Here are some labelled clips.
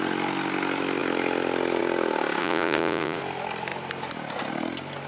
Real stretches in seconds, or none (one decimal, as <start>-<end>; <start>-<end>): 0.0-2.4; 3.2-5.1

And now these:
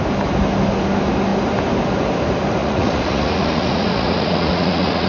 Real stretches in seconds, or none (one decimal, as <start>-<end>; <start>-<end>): 0.0-2.6

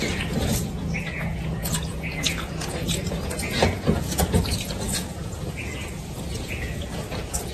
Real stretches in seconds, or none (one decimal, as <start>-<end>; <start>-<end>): none